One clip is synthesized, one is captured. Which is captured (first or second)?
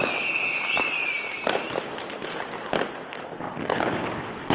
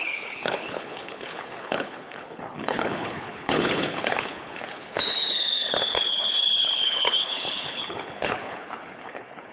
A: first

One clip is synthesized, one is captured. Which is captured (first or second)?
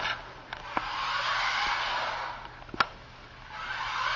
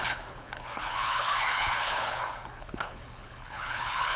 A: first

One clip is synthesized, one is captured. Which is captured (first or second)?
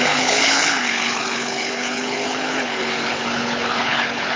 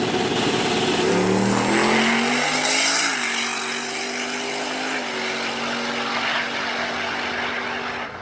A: second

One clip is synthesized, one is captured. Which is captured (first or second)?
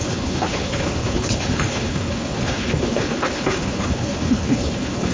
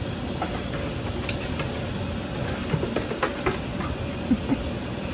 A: second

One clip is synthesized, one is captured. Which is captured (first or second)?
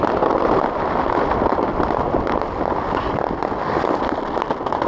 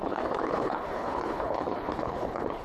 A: first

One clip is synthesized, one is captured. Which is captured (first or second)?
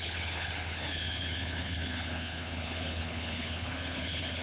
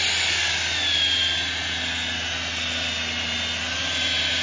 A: second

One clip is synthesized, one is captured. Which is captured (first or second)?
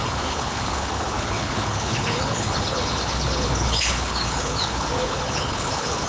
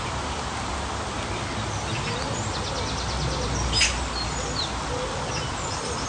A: second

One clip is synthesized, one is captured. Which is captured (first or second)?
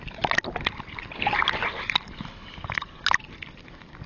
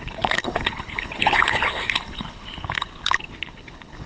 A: first